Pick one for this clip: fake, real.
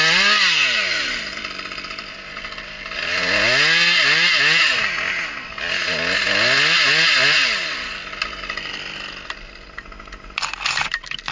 real